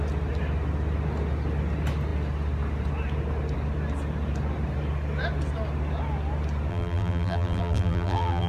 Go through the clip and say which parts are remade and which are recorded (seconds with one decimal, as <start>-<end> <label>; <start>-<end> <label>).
0.0-6.7 recorded; 6.7-8.5 remade